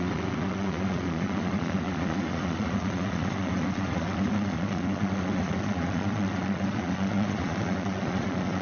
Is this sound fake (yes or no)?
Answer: yes